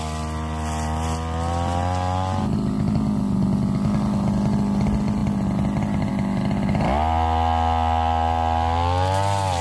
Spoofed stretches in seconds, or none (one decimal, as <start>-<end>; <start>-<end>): none